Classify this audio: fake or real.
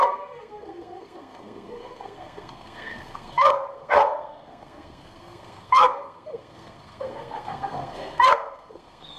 fake